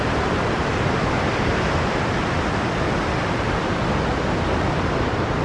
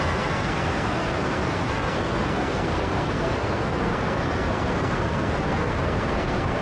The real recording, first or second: first